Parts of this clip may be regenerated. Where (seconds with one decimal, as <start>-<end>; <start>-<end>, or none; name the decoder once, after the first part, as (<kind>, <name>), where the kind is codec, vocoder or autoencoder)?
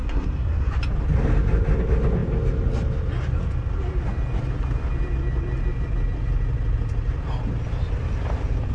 0.0-0.7 (codec, SNAC)